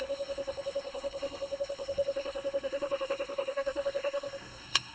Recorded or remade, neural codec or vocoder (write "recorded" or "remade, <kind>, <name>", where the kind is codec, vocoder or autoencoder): remade, codec, SNAC